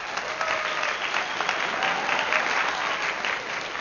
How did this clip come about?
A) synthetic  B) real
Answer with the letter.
B